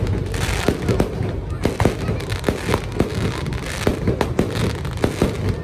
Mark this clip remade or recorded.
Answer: recorded